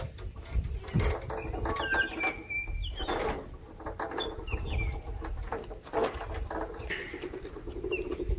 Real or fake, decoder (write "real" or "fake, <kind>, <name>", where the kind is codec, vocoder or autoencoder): real